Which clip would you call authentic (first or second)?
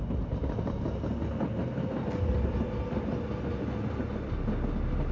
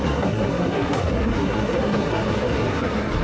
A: first